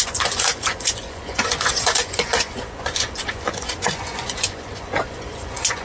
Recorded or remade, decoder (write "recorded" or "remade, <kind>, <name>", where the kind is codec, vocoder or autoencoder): remade, vocoder, Vocos